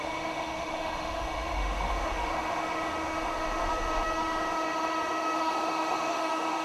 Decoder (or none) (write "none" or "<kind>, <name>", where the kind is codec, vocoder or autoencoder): autoencoder, DAC-VAE